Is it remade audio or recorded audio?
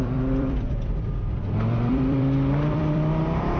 remade